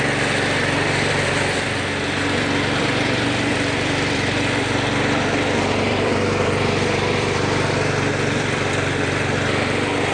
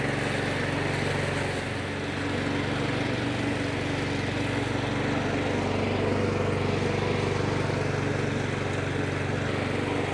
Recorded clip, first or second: second